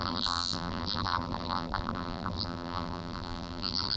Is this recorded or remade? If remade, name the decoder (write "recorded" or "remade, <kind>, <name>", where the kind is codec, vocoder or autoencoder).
remade, vocoder, BigVGAN v2